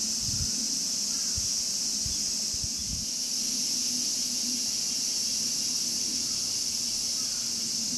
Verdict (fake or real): real